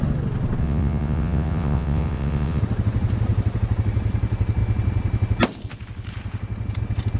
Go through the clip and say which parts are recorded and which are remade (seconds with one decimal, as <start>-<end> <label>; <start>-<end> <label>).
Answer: 0.0-0.6 recorded; 0.6-2.6 remade; 2.6-7.2 recorded